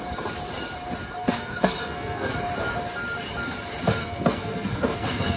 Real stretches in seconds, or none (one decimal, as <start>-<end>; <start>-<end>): 0.0-1.2; 2.3-4.0